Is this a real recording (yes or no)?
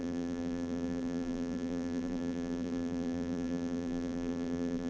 no